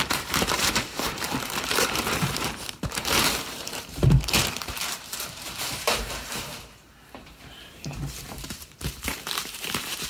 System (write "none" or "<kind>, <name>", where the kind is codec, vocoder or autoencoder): vocoder, BigVGAN v2